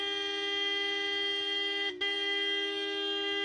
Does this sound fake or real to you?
real